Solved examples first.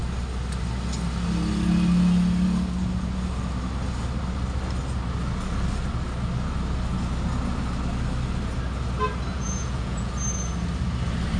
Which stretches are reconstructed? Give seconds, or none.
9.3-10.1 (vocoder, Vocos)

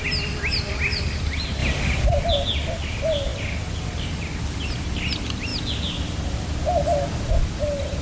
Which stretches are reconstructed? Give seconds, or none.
none

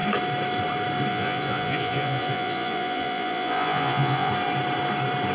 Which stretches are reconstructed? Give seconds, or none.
1.1-4.3 (vocoder, Vocos)

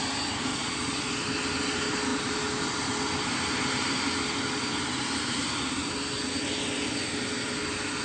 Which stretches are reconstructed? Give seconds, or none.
0.5-1.1 (vocoder, Vocos)

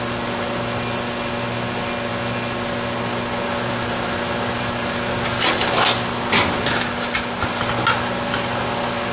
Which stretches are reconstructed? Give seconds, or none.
none

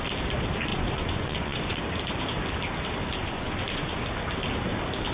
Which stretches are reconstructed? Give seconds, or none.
0.7-1.8 (vocoder, Vocos); 3.2-4.0

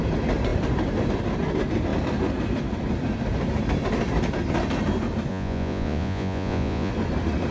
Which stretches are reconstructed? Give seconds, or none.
5.3-6.9 (vocoder, Vocos)

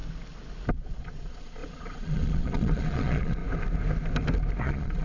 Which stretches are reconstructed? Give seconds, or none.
0.7-3.4 (vocoder, Vocos); 4.6-5.0